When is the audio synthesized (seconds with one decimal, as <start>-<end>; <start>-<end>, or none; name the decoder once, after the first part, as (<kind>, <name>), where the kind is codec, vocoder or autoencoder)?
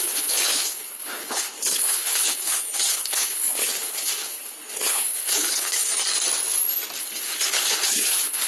0.0-5.9 (codec, HILCodec); 7.0-8.5